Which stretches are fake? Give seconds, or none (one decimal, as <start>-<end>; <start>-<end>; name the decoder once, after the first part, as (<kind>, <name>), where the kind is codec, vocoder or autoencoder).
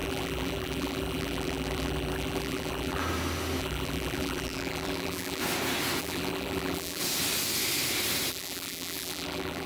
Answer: 0.0-3.0 (vocoder, BigVGAN v2); 3.6-5.4; 6.0-7.0; 8.3-9.7